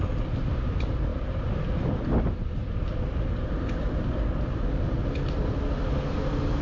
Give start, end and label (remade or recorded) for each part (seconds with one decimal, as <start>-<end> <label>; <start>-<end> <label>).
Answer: 0.0-6.6 recorded